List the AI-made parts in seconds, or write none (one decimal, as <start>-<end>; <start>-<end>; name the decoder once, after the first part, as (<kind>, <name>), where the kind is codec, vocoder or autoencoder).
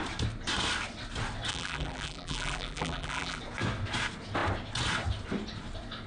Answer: 1.5-3.4 (vocoder, BigVGAN v2)